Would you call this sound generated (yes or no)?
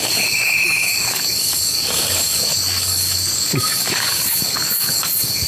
yes